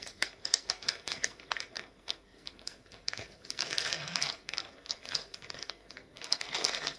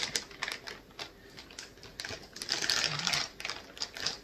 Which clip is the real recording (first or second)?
second